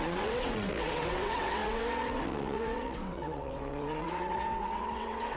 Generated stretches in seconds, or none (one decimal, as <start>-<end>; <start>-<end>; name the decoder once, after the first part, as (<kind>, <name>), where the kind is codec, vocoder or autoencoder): 0.0-5.4 (vocoder, WaveNeXt)